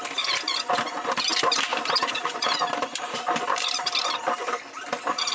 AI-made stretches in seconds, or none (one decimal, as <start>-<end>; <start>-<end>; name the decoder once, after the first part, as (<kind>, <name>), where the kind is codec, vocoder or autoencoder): none